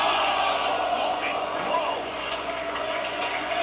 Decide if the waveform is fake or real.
fake